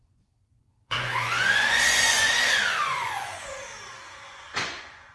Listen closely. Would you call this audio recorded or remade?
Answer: remade